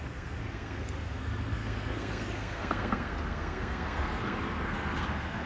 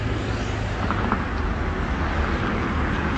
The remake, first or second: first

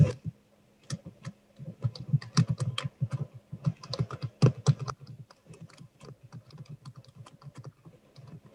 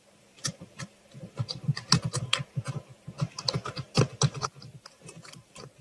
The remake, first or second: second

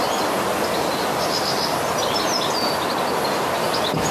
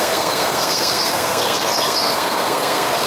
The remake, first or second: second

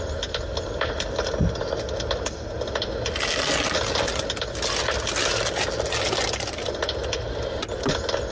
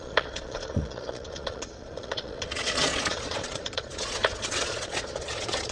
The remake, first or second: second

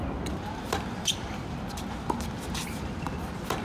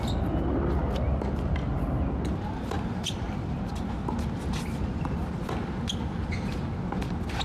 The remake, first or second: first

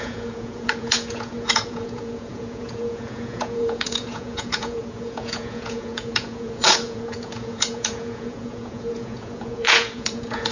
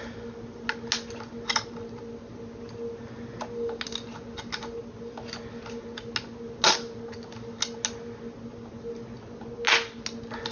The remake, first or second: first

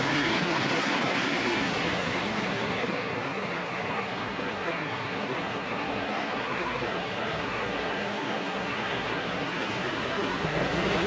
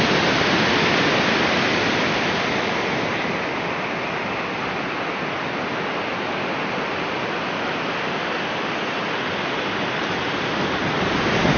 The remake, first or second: first